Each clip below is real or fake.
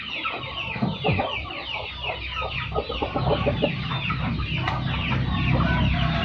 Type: real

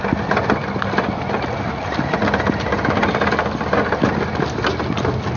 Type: real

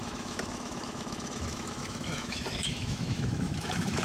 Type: fake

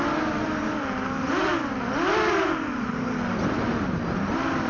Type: fake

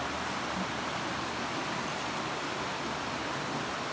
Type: real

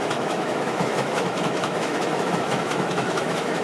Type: fake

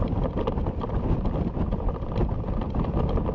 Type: real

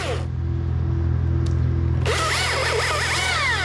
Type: real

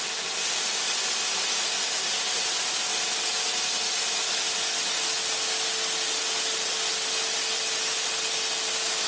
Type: real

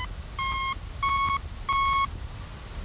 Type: real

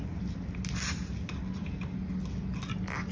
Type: real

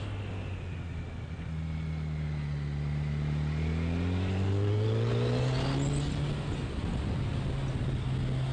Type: real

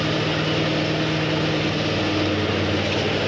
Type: real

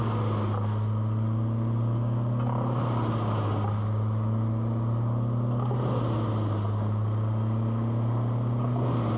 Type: real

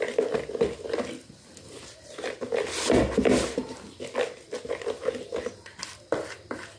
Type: real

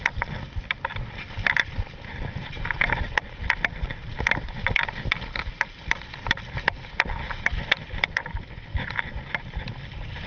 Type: real